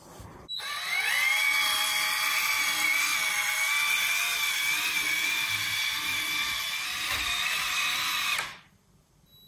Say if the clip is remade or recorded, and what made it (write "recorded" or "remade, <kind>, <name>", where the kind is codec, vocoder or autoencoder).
recorded